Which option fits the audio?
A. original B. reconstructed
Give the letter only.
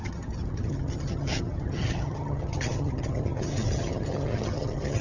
B